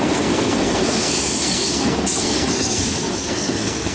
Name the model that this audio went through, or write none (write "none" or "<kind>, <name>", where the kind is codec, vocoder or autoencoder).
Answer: codec, SNAC